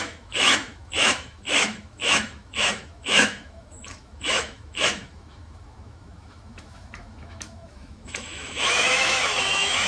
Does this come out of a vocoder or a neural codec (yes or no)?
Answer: yes